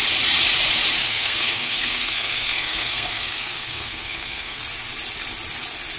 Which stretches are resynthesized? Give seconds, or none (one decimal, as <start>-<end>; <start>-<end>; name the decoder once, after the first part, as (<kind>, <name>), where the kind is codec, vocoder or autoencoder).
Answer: 1.0-4.6 (codec, SNAC)